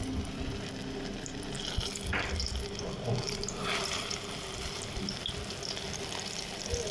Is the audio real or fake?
real